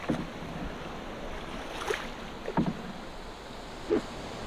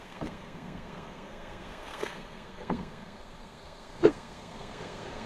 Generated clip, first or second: second